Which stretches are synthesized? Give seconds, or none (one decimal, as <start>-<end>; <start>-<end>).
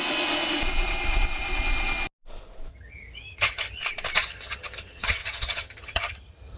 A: 2.7-3.8; 4.2-6.6